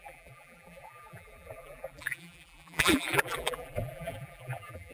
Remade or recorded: remade